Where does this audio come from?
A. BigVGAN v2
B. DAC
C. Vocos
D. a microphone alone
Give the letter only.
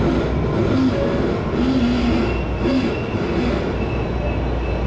D